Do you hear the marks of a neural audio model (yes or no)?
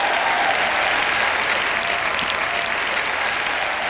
no